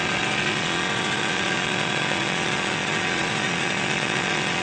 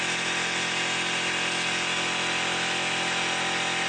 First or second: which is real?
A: second